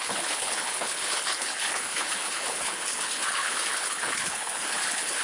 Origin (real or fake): fake